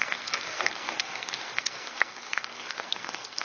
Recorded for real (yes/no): no